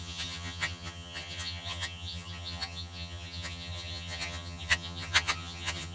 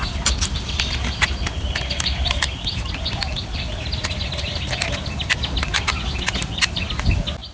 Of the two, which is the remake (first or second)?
first